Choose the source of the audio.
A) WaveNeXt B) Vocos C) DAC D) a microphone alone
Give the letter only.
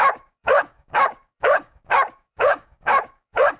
C